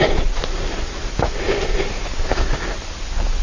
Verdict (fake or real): real